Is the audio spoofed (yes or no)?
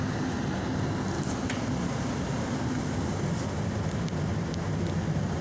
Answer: no